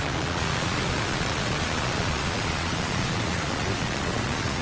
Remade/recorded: remade